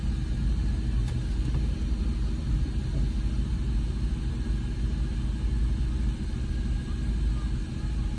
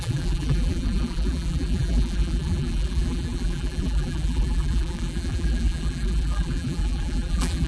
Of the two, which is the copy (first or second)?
second